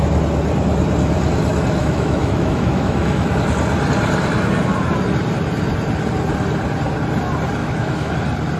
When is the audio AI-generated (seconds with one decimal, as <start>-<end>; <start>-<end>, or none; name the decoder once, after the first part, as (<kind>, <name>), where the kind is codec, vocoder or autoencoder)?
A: 1.8-3.3 (autoencoder, DAC-VAE); 7.6-8.1